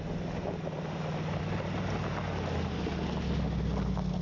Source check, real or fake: real